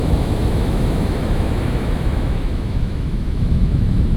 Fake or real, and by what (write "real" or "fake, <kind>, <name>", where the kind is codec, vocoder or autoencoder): fake, autoencoder, DAC-VAE